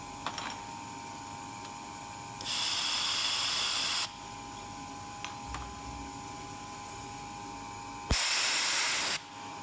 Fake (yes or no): no